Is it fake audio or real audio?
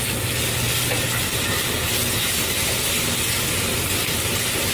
real